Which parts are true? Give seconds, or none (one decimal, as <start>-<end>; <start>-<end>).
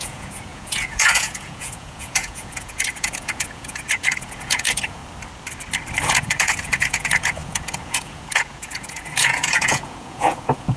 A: 5.0-6.0